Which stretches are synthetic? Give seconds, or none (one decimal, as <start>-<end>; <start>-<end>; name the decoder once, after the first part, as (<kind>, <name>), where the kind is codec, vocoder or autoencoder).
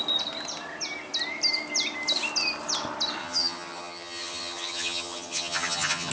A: 3.2-6.1 (vocoder, HiFi-GAN)